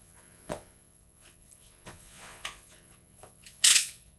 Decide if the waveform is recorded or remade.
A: remade